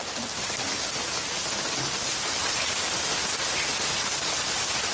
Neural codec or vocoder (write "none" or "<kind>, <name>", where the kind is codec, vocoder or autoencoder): none